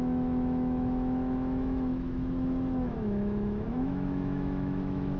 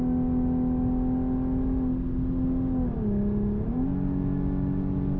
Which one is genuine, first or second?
second